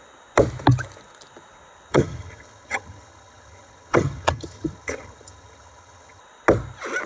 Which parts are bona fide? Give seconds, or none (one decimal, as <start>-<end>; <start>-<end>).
0.0-1.9; 6.2-7.1